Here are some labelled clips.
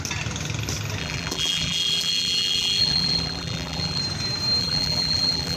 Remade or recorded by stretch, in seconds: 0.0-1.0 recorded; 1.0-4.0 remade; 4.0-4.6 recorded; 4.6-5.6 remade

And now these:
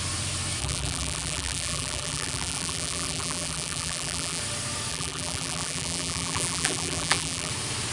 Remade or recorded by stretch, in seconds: 0.0-0.6 recorded; 0.6-4.4 remade; 4.4-4.9 recorded; 4.9-7.5 remade; 7.5-7.9 recorded

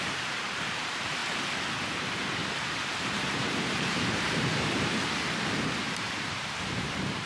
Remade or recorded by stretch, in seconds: 0.0-1.2 remade; 1.2-2.0 recorded; 2.0-2.4 remade; 2.4-3.0 recorded; 3.0-7.3 remade